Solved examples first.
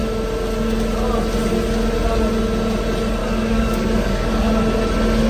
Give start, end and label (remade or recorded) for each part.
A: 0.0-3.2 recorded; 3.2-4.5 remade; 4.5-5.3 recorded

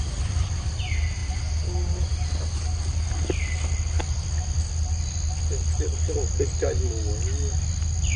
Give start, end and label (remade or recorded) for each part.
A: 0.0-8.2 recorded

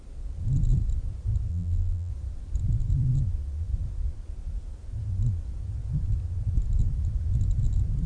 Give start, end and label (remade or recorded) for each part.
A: 0.0-1.5 recorded; 1.5-2.1 remade; 2.1-8.1 recorded

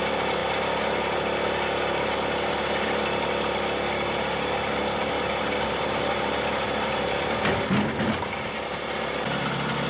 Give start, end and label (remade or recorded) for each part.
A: 0.0-9.9 recorded